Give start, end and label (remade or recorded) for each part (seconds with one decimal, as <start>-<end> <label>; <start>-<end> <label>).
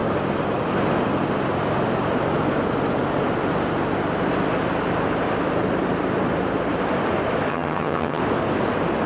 0.0-7.5 recorded; 7.5-8.2 remade; 8.2-9.1 recorded